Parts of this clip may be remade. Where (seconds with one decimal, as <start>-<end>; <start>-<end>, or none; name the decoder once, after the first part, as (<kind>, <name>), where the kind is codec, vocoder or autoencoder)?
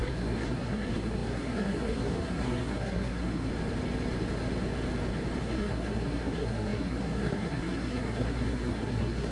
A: 0.0-3.5 (codec, SNAC); 5.4-9.3